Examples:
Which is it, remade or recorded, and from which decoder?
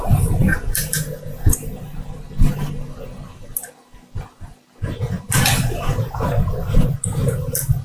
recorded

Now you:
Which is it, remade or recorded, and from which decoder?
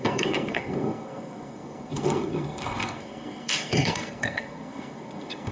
remade, codec, SNAC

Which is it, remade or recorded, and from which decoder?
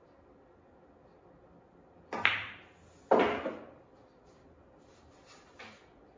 recorded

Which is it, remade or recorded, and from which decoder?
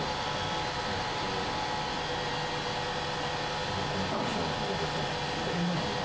recorded